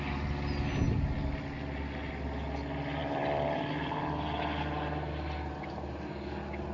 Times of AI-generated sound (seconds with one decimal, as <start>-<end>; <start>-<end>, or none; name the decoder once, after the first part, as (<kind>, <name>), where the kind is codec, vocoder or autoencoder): 3.0-3.7 (vocoder, BigVGAN v2)